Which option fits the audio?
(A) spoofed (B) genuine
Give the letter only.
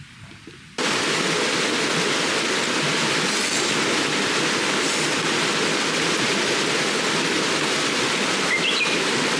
B